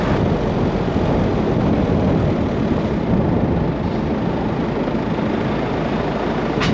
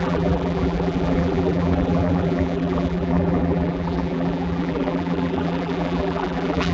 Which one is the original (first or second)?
first